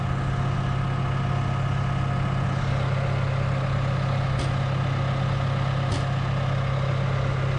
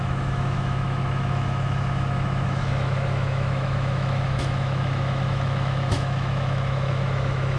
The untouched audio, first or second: first